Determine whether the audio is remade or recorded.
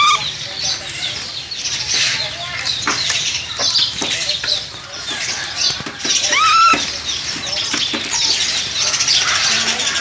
recorded